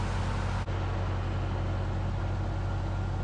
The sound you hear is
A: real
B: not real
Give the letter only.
A